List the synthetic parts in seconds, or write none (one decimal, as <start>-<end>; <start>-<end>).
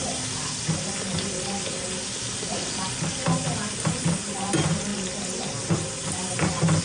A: none